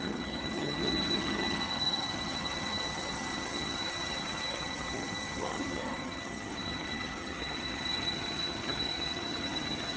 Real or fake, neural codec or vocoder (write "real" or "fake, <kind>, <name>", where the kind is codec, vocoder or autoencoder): fake, vocoder, HiFi-GAN